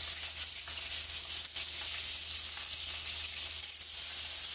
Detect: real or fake real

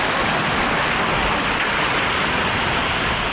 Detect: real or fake real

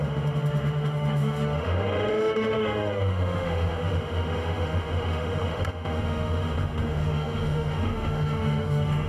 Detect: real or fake fake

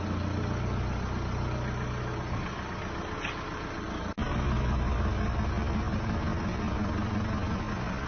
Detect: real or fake real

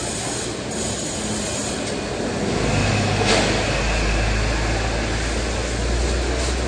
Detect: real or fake real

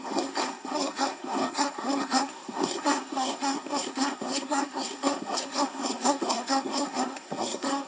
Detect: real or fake fake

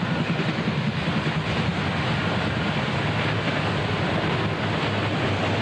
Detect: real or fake real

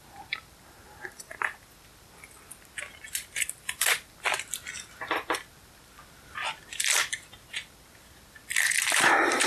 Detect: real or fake fake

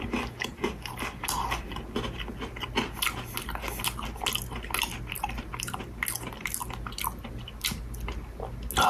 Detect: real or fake real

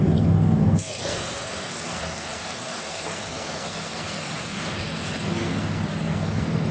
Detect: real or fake fake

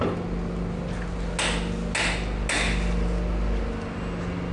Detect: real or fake real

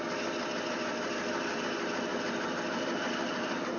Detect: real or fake real